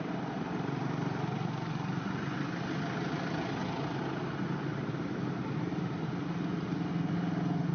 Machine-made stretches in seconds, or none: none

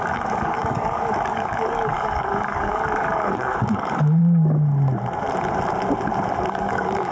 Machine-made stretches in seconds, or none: 0.0-4.2 (codec, DAC); 6.5-7.1

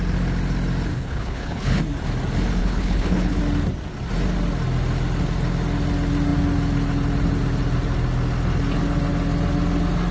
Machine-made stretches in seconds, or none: 0.9-1.8 (codec, HILCodec); 2.6-3.4

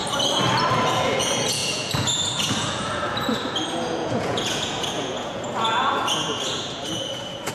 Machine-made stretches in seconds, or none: 1.0-7.5 (vocoder, Vocos)

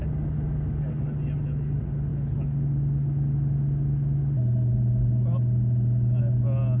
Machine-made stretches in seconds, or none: none

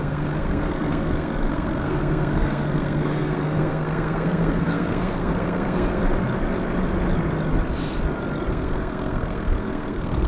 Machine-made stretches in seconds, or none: 0.0-6.0 (codec, SNAC); 8.5-10.3

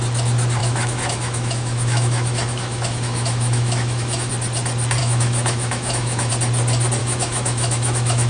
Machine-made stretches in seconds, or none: 0.6-4.3 (autoencoder, DAC-VAE); 5.0-6.3; 7.0-8.3